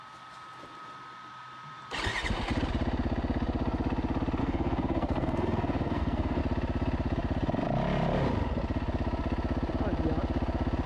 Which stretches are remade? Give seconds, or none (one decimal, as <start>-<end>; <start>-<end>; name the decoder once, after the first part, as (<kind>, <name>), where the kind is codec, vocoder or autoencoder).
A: 4.4-6.4 (codec, SNAC)